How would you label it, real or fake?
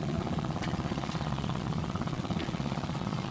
fake